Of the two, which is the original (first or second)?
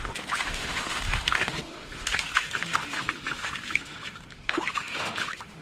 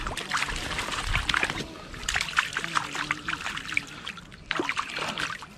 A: second